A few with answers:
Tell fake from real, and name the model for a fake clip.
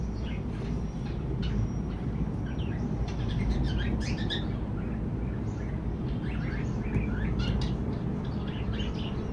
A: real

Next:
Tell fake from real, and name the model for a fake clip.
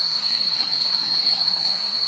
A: fake, codec, SNAC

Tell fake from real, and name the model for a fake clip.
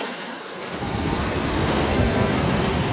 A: fake, codec, SNAC